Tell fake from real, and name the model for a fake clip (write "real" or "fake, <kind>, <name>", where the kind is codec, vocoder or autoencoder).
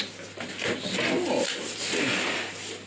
real